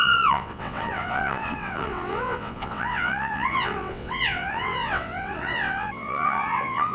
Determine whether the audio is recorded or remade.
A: remade